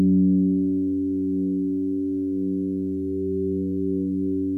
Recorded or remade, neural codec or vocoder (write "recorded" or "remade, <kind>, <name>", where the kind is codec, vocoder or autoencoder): recorded